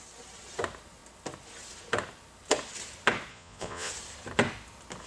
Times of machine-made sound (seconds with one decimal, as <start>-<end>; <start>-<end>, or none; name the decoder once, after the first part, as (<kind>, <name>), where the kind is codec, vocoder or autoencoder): 3.3-3.9 (vocoder, Vocos)